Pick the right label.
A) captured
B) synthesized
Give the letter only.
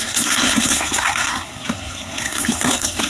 B